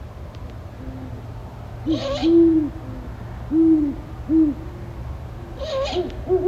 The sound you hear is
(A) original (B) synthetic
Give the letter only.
A